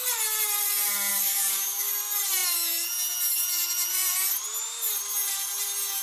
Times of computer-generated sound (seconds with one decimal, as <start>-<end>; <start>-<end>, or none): 1.1-1.9